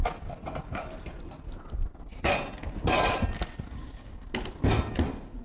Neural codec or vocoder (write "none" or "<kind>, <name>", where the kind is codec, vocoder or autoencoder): none